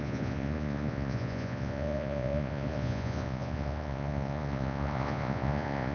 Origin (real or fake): fake